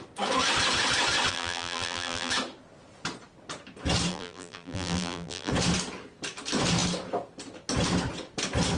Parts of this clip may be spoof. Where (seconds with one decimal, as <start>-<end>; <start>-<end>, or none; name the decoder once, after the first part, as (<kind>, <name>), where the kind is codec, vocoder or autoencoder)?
1.3-2.3 (vocoder, BigVGAN v2); 4.1-5.5